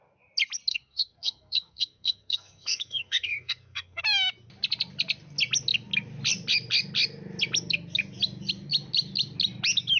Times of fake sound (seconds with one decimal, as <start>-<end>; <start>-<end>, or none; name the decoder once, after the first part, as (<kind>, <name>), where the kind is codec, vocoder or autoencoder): 0.7-4.0 (codec, SNAC)